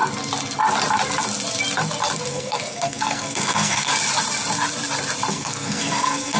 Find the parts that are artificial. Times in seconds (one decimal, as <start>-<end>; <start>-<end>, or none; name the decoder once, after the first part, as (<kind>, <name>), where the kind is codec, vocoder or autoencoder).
2.3-3.9 (codec, SNAC); 5.3-6.4